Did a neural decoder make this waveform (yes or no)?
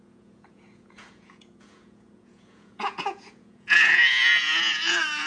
yes